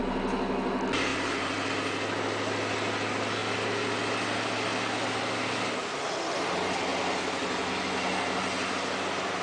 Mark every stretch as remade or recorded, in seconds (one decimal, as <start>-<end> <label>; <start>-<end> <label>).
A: 0.0-9.4 recorded